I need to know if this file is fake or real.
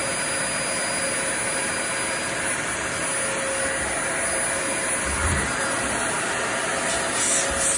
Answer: real